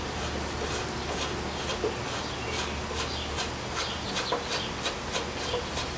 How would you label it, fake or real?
real